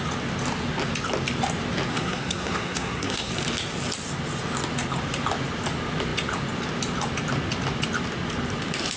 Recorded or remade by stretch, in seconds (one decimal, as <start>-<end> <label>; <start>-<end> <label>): 0.0-1.9 recorded; 1.9-3.3 remade; 3.3-9.0 recorded